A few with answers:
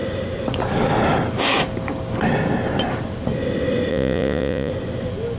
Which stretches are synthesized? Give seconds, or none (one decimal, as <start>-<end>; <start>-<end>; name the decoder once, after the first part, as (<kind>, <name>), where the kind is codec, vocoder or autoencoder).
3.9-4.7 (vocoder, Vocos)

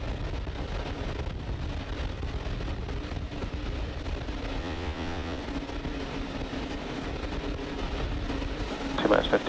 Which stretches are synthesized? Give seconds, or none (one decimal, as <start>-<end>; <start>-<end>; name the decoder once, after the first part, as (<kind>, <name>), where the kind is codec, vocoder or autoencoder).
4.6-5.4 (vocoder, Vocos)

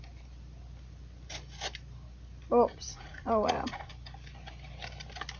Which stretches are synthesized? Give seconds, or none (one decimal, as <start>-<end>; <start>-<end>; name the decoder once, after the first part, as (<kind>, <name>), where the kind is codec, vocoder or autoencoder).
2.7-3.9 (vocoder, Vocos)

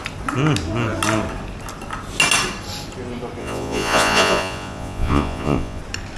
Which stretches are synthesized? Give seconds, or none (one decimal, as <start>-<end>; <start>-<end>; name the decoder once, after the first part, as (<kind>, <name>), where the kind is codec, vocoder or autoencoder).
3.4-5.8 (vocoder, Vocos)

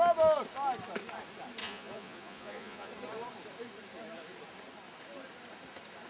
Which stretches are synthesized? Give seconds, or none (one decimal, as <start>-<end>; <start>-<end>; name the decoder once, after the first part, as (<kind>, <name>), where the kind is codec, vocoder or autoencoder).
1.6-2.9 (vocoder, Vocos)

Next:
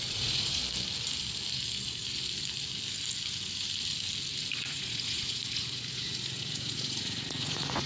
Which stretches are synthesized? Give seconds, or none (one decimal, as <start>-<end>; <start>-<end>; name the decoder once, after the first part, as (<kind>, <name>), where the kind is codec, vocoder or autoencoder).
0.0-0.6 (vocoder, Vocos); 4.6-7.9

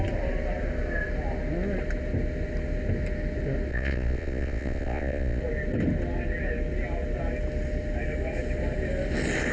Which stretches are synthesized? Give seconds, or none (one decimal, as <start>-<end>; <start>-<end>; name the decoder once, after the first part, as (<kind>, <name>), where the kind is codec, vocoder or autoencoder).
3.7-5.4 (vocoder, Vocos)

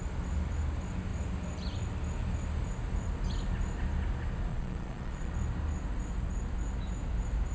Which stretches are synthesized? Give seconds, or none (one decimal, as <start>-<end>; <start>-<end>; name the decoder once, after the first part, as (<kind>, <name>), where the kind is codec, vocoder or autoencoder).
4.5-5.3 (vocoder, Vocos)